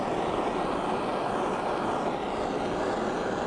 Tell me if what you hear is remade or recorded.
recorded